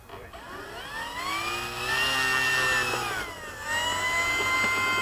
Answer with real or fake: real